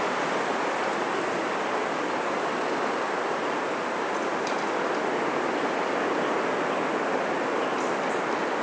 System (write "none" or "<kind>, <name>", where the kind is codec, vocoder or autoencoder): none